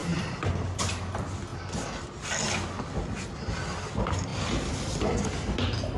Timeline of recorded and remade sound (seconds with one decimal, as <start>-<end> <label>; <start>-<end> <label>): 0.0-1.1 remade; 1.1-4.3 recorded; 4.3-5.0 remade; 5.0-6.0 recorded